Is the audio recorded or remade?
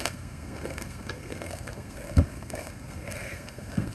remade